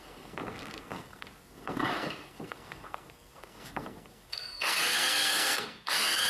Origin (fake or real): fake